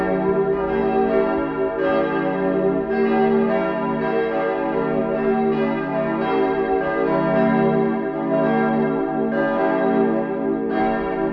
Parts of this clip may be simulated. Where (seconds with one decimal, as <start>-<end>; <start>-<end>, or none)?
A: none

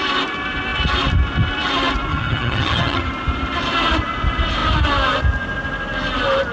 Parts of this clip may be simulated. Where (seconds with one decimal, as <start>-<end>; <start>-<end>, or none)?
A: 2.1-3.1

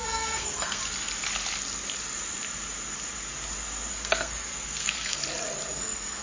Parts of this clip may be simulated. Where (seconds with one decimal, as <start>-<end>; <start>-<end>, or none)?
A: 0.0-0.8; 3.9-5.2; 5.7-6.2

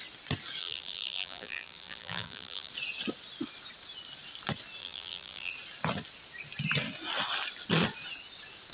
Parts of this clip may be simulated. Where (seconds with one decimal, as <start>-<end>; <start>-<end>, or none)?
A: 0.6-2.7; 4.8-5.5